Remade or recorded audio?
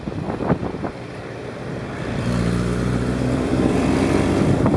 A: remade